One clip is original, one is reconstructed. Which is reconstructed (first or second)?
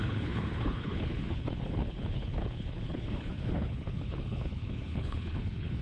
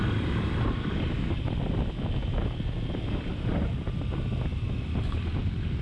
first